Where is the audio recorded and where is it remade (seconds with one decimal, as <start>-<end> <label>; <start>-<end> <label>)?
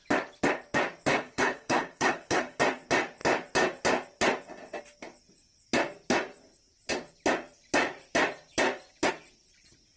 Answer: 0.0-1.1 recorded; 1.1-2.6 remade; 2.6-10.0 recorded